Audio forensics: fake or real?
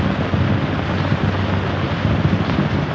fake